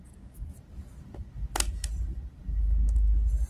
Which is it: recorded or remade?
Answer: recorded